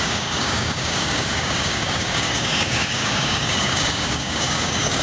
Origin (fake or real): fake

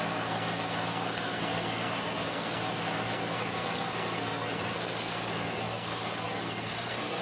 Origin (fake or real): fake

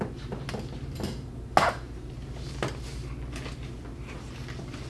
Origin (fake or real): real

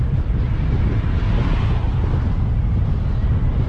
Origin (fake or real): real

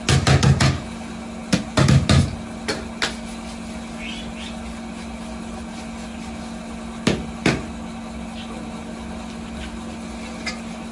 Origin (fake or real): real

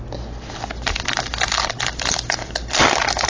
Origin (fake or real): real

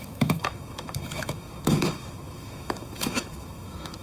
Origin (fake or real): fake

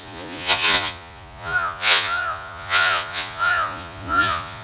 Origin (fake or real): fake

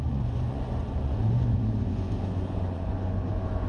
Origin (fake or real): fake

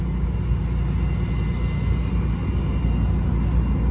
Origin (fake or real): real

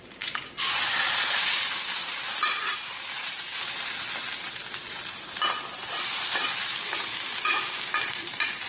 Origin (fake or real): fake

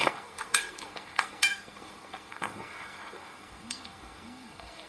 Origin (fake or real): fake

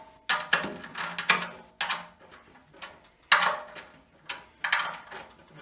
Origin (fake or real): real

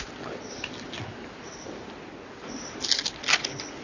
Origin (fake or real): real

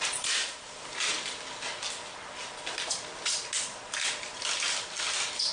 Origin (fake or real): real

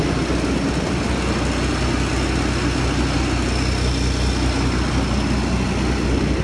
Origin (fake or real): real